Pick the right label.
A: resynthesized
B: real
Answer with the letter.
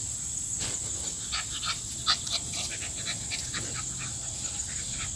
B